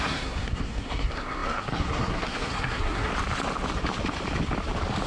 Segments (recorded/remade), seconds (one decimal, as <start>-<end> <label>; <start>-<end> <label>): 0.0-3.1 remade; 3.1-5.1 recorded